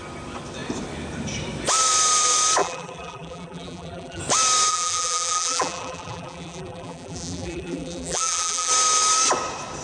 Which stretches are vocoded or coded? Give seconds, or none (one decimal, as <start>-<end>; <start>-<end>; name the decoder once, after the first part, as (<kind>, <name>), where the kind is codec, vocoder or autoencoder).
2.6-4.2 (vocoder, BigVGAN v2); 4.7-8.7